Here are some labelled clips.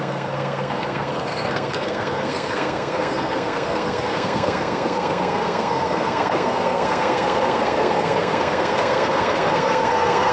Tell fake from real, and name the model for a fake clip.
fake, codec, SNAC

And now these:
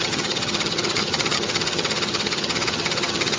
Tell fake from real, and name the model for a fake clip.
fake, vocoder, HiFi-GAN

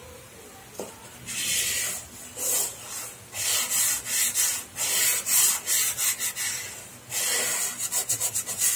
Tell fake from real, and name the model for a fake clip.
real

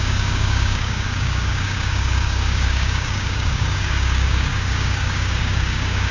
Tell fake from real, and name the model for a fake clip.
fake, codec, DAC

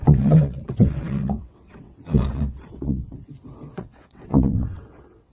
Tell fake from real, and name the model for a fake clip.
fake, vocoder, WaveNeXt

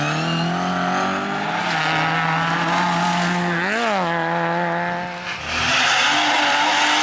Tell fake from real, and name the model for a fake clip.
real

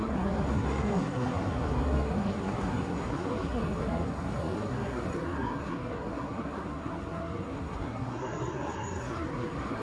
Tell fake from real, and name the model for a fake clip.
fake, codec, SNAC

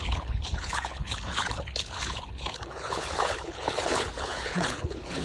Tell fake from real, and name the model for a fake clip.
fake, codec, HILCodec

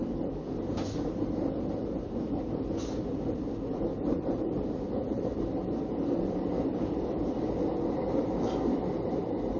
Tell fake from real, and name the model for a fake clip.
fake, vocoder, BigVGAN v2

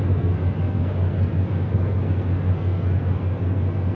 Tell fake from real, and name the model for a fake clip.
fake, codec, SNAC